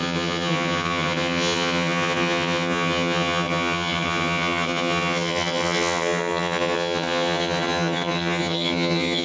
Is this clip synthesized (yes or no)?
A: yes